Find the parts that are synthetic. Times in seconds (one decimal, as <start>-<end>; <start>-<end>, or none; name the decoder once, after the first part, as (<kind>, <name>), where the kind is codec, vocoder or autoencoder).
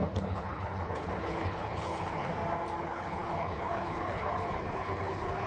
0.0-2.3 (codec, HILCodec); 2.8-5.5